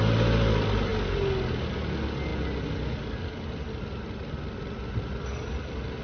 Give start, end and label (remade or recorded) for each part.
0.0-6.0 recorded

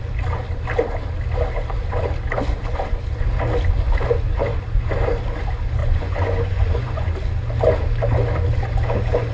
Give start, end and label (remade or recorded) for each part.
0.0-5.8 recorded; 5.8-7.1 remade; 7.1-9.3 recorded

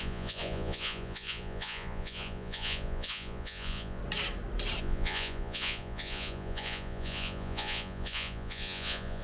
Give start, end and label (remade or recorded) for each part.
0.0-4.0 remade; 4.0-4.8 recorded; 4.8-9.2 remade

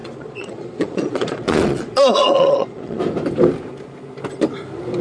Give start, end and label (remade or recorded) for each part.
0.0-3.0 remade; 3.0-5.0 recorded

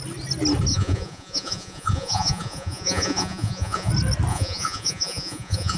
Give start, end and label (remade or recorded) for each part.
0.0-0.7 recorded; 0.7-3.9 remade; 3.9-4.3 recorded; 4.3-5.8 remade

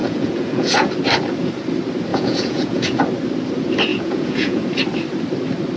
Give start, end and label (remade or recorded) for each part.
0.0-0.9 remade; 0.9-2.1 recorded; 2.1-3.0 remade; 3.0-3.9 recorded; 3.9-4.6 remade; 4.6-5.8 recorded

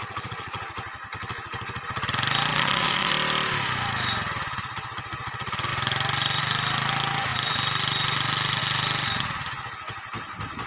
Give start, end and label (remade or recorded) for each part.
0.0-0.6 remade; 0.6-2.5 recorded; 2.5-3.1 remade; 3.1-10.7 recorded